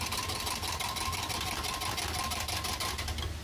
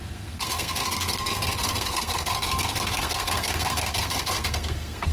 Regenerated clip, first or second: second